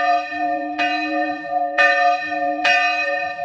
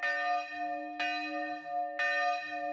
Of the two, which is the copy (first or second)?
first